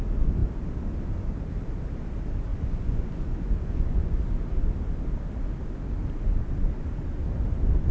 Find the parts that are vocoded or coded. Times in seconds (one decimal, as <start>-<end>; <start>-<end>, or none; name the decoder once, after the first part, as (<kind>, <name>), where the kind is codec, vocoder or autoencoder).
2.5-4.2 (vocoder, Vocos)